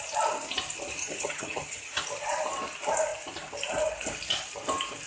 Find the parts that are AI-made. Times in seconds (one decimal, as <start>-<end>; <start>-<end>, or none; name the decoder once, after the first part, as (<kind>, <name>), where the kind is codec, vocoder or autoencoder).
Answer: 1.0-2.0 (vocoder, HiFi-GAN)